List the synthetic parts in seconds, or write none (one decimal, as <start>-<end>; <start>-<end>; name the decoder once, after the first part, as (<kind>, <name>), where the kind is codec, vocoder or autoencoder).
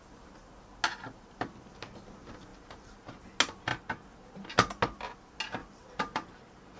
2.5-3.1 (vocoder, BigVGAN v2); 5.6-6.8